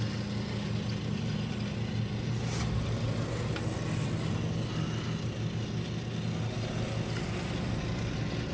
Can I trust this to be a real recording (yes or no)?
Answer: yes